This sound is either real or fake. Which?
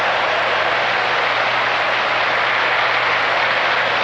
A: real